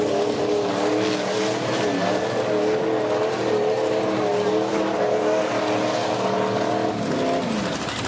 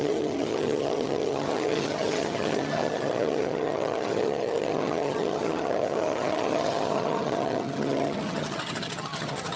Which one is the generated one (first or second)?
second